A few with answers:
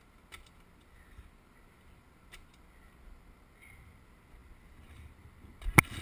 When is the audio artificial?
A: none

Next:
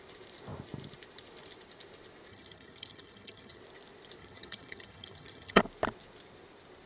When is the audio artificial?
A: 2.3-3.6 (vocoder, HiFi-GAN); 4.2-5.6

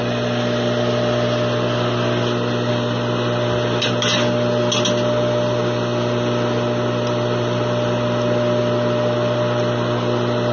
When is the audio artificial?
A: none

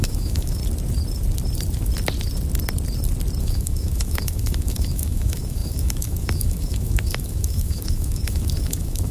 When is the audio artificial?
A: 0.0-0.6 (autoencoder, DAC-VAE); 3.4-9.1

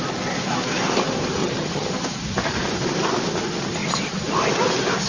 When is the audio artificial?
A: 1.4-1.9 (vocoder, HiFi-GAN)

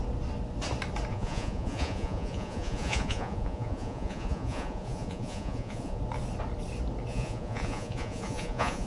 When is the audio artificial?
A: 1.1-6.0 (vocoder, Vocos); 7.1-8.9

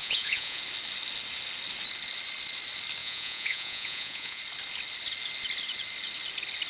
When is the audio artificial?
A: 0.0-0.6 (vocoder, Vocos); 3.0-4.4